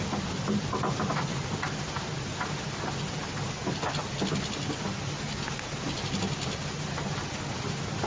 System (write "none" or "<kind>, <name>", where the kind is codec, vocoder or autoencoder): none